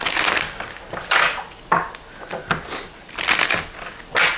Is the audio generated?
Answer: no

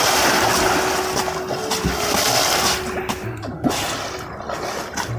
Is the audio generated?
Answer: no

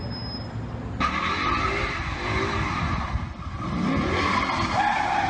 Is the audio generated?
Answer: no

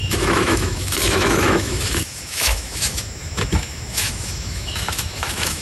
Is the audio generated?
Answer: yes